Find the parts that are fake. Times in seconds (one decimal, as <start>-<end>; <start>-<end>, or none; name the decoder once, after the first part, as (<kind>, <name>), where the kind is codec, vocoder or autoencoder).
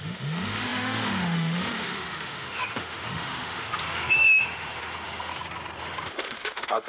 0.0-5.3 (autoencoder, DAC-VAE); 5.8-6.9